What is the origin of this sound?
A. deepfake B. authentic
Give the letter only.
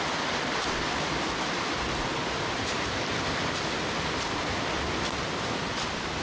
B